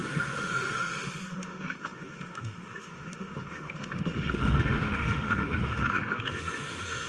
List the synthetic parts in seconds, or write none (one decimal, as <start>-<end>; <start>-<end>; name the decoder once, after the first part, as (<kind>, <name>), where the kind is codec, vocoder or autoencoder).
0.0-7.1 (autoencoder, DAC-VAE)